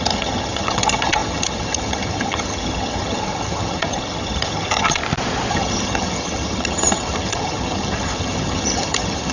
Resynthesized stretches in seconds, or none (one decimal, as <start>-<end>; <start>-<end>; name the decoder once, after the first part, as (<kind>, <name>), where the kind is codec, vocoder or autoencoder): 0.0-5.0 (vocoder, HiFi-GAN); 5.5-9.3